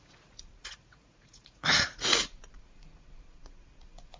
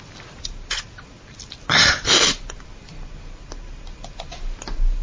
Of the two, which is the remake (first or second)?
first